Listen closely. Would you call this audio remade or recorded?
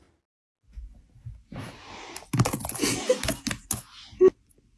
recorded